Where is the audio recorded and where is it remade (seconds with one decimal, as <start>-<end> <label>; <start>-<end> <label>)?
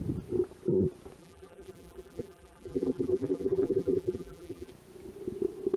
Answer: 0.0-1.2 recorded; 1.2-4.7 remade; 4.7-5.8 recorded